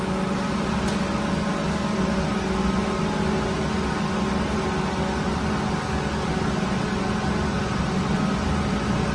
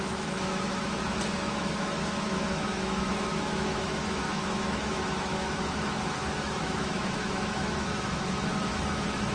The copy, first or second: second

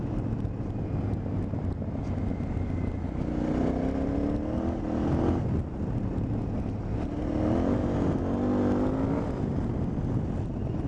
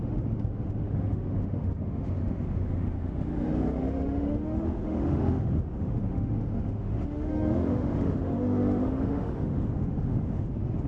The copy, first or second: second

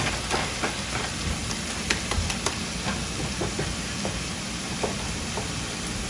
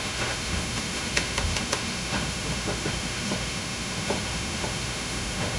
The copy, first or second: second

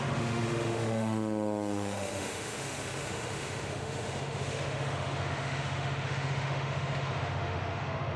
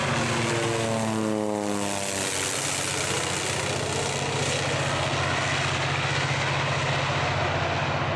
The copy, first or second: first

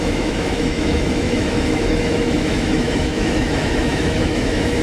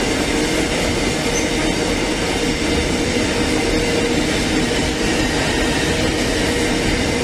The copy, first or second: first